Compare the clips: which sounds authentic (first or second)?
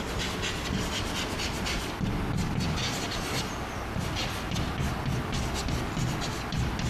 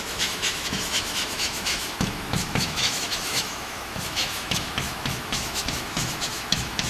first